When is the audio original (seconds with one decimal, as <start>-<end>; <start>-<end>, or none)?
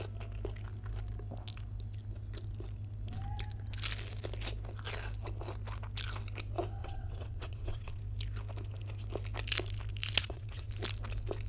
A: 0.0-6.8; 8.0-10.2; 10.7-11.5